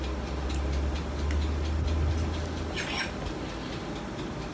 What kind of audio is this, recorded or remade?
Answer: recorded